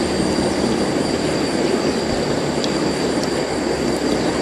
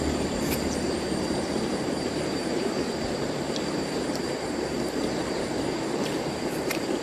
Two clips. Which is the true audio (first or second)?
first